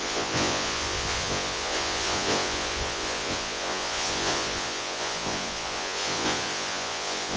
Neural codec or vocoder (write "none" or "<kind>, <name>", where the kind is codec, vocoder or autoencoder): vocoder, Vocos